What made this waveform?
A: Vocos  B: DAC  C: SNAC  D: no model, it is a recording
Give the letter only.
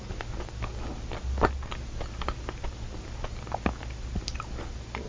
D